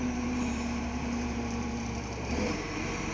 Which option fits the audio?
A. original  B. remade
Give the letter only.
B